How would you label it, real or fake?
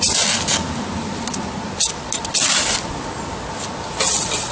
real